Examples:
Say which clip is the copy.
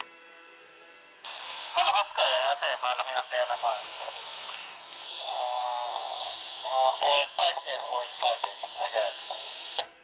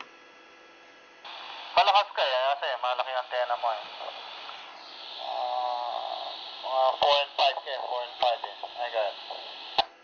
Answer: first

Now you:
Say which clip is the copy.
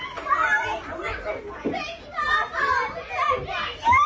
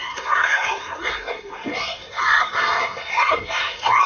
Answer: second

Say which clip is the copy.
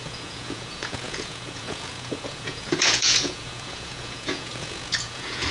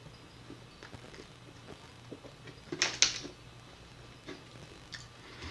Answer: first